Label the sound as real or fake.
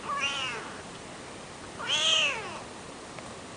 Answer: real